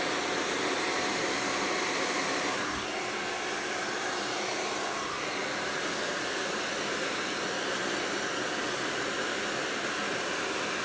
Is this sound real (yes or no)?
yes